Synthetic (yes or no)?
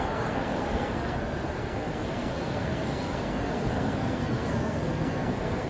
yes